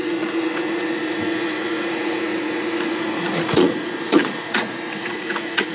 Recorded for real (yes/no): no